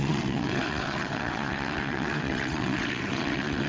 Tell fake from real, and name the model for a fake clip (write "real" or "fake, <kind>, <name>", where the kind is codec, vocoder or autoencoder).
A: fake, vocoder, WaveNeXt